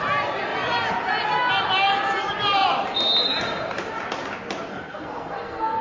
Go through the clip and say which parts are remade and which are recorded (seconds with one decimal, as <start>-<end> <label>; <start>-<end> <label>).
0.0-4.7 recorded; 4.7-5.8 remade